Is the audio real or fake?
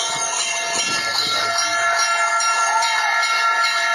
real